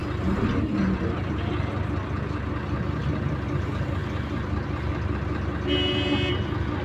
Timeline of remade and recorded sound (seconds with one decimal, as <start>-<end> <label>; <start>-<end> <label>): 0.0-6.8 recorded